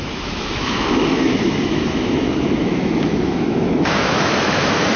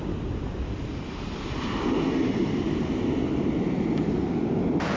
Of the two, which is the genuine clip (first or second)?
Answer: second